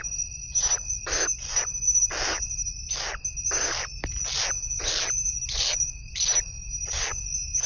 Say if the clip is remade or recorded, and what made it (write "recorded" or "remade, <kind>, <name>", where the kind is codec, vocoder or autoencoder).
recorded